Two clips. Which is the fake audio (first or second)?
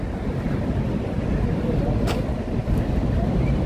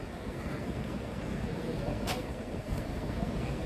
second